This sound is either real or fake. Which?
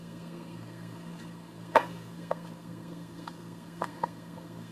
fake